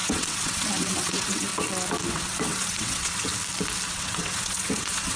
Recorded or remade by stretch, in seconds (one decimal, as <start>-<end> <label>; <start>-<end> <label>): 0.0-1.5 remade; 1.5-2.1 recorded; 2.1-3.3 remade; 3.3-3.9 recorded; 3.9-5.2 remade